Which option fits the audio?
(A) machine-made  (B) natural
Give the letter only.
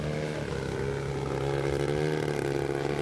B